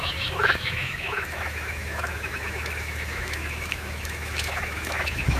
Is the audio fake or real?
fake